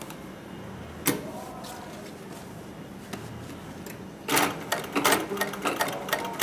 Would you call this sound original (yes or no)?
yes